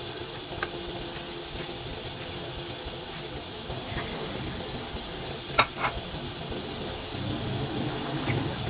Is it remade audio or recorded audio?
recorded